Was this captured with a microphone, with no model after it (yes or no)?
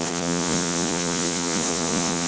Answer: no